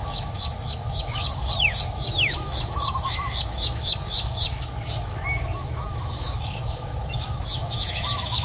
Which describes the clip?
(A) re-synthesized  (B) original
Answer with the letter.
A